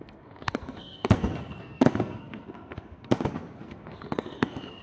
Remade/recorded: remade